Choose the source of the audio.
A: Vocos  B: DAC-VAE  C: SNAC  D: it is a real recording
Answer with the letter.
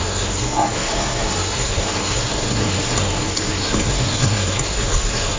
C